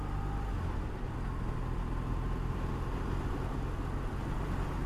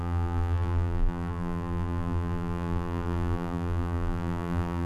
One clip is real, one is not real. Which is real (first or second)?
first